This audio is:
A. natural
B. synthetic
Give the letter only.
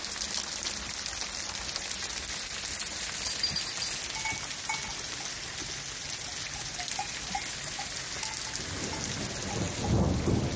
A